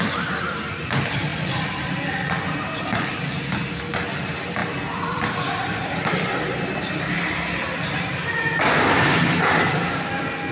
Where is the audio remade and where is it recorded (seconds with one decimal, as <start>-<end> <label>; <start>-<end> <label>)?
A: 0.0-1.3 recorded; 1.3-3.4 remade; 3.4-4.6 recorded; 4.6-8.4 remade; 8.4-10.5 recorded